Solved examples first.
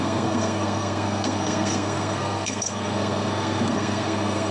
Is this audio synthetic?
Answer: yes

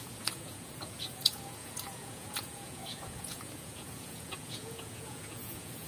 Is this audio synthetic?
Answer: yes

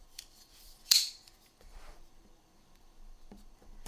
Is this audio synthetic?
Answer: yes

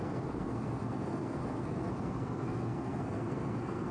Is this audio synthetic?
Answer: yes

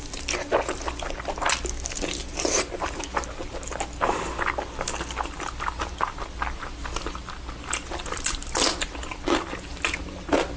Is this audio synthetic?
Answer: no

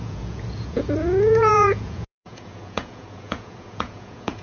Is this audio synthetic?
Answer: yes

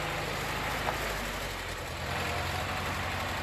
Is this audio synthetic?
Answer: no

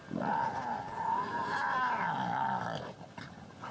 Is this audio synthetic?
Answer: no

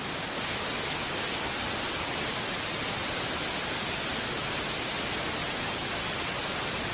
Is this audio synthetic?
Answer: no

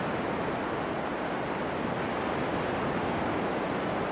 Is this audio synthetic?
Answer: no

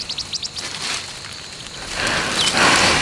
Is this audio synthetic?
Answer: no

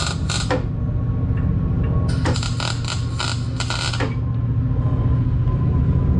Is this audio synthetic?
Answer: no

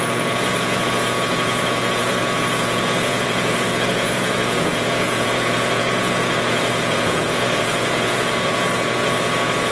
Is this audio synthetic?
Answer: yes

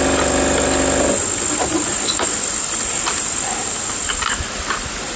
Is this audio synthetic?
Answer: no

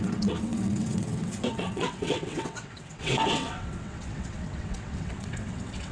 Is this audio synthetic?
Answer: yes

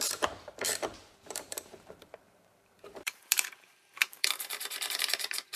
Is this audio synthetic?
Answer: yes